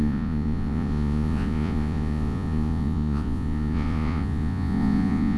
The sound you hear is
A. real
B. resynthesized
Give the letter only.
B